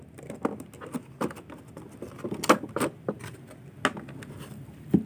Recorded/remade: recorded